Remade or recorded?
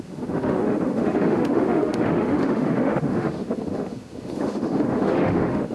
remade